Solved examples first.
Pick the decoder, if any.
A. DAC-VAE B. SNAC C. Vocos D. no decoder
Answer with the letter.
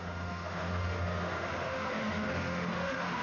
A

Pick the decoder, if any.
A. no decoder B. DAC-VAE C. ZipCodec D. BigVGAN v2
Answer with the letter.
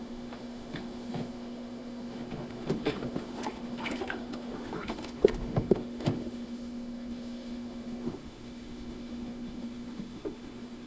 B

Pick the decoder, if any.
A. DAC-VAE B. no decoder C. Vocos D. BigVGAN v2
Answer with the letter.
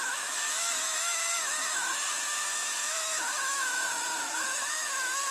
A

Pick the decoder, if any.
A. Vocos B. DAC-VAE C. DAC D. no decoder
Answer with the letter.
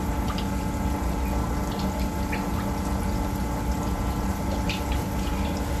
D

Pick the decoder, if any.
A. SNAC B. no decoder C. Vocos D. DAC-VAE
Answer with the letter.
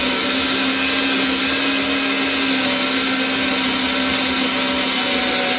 B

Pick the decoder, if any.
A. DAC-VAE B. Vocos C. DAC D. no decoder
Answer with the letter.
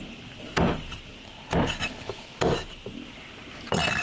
D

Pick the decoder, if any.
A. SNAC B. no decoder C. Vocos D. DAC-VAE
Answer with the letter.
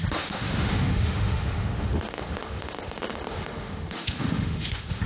D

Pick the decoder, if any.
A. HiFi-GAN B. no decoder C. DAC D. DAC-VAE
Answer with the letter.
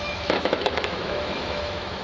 D